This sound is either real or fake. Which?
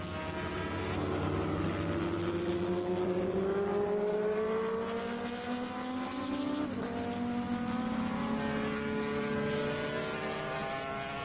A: real